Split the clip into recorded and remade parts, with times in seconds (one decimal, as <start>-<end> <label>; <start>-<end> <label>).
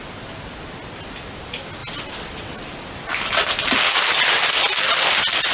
0.0-1.8 recorded; 1.8-3.9 remade; 3.9-5.5 recorded